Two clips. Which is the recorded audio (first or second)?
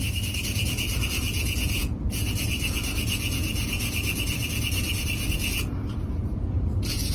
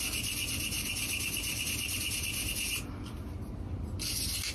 second